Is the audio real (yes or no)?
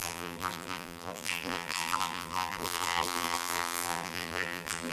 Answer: no